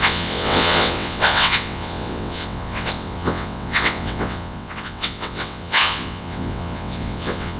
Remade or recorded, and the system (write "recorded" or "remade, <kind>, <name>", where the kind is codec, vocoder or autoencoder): remade, vocoder, WaveNeXt